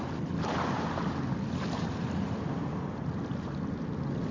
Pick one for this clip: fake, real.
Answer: real